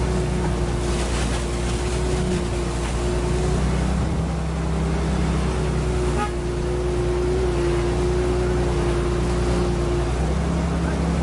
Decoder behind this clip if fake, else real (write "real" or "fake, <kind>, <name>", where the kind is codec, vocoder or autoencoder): real